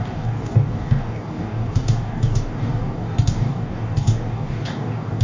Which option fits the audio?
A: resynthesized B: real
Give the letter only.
A